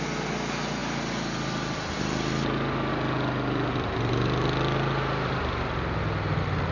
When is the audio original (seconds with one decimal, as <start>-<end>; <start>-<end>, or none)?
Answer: 0.0-6.7